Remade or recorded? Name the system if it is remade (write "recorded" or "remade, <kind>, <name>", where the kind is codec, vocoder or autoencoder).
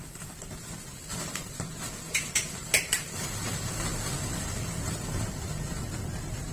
recorded